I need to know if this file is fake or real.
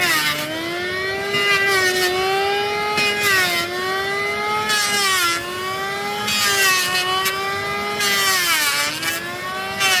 real